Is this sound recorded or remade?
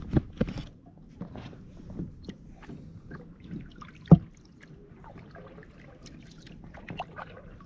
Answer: recorded